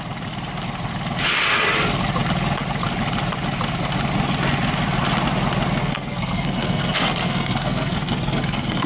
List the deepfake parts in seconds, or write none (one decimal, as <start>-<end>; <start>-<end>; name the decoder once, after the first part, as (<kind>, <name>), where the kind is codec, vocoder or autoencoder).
5.8-8.9 (codec, SNAC)

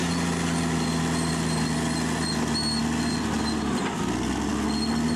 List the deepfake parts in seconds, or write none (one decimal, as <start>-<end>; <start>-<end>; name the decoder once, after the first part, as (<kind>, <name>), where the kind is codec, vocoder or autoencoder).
none

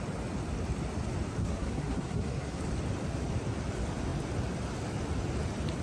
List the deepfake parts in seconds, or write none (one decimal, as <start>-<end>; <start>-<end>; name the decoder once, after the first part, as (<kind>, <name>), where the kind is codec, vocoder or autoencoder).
1.4-2.6 (codec, SNAC)